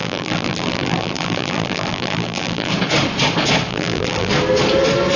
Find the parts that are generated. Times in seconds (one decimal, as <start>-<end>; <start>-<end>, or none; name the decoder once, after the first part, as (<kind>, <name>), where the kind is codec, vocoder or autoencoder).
0.0-2.7 (vocoder, BigVGAN v2); 3.7-4.3